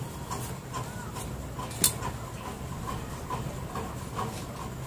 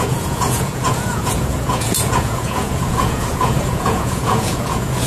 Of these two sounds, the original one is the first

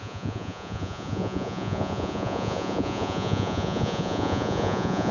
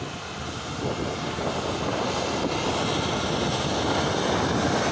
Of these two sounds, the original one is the second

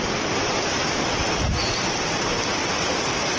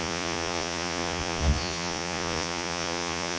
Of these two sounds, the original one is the first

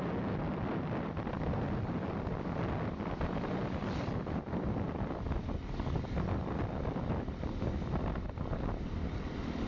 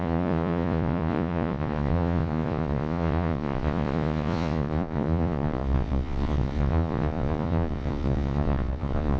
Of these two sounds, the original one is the first